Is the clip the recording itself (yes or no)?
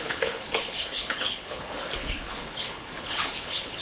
no